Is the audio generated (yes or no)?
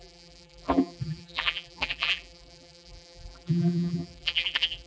yes